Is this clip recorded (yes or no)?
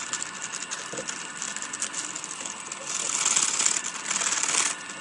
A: yes